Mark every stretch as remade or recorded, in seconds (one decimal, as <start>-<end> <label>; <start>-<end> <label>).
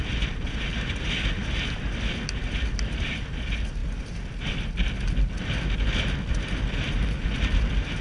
0.0-8.0 recorded